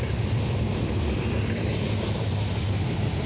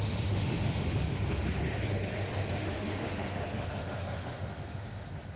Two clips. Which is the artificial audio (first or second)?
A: second